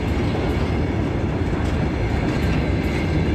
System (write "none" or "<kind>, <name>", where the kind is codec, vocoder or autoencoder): none